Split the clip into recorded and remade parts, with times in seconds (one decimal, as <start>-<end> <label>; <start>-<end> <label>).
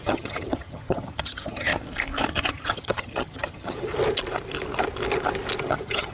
0.0-1.7 remade; 1.7-2.3 recorded; 2.3-3.9 remade; 3.9-5.6 recorded; 5.6-6.1 remade